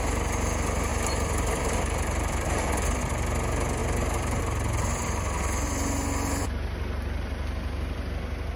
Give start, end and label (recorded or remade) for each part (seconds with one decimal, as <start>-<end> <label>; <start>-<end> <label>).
0.0-0.9 recorded; 0.9-3.0 remade; 3.0-3.8 recorded; 3.8-4.4 remade; 4.4-8.6 recorded